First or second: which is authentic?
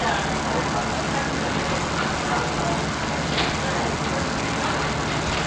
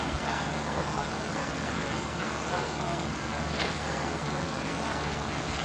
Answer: first